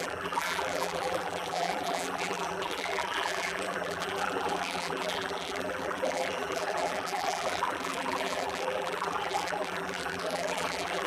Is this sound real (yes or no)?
no